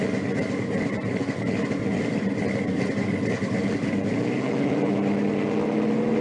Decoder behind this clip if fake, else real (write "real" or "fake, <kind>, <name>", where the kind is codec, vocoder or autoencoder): real